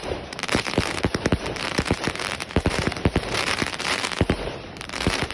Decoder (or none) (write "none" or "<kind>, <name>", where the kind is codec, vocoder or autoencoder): vocoder, BigVGAN v2